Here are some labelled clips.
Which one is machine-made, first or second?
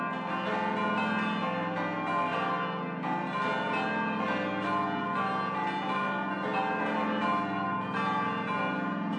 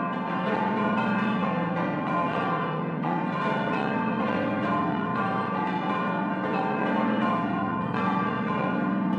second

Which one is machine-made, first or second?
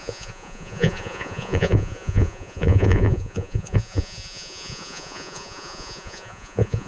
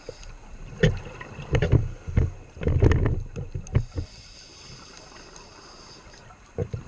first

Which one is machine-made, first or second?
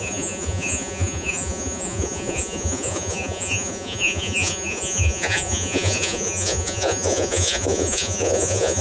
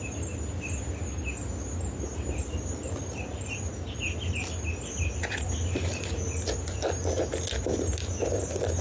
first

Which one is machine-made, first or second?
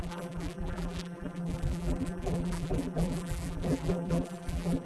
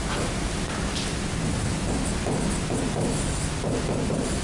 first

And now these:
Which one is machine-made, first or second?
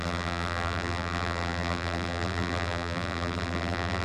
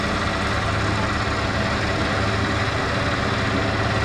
first